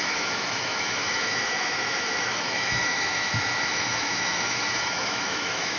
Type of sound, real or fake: fake